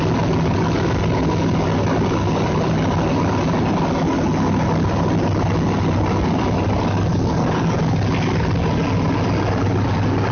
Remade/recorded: recorded